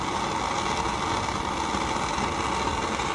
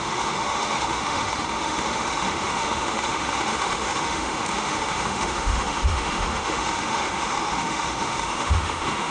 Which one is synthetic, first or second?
second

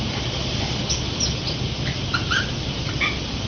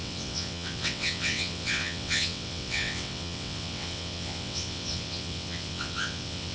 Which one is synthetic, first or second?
second